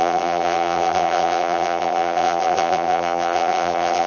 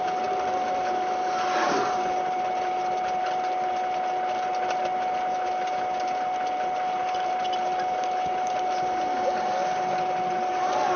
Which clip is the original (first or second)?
second